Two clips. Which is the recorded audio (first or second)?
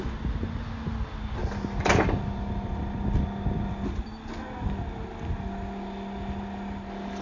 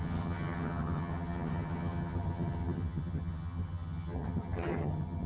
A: first